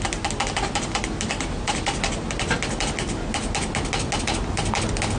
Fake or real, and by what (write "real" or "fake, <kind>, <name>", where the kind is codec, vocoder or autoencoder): real